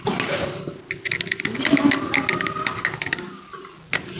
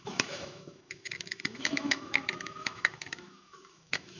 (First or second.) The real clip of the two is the first